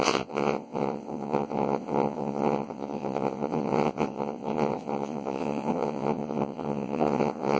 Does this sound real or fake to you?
fake